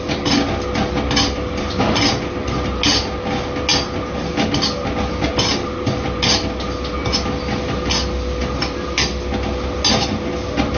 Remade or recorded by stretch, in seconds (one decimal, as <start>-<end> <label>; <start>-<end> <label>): 0.0-10.8 recorded